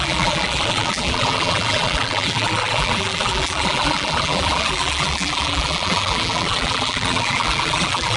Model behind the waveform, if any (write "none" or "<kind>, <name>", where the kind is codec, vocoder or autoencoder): vocoder, BigVGAN v2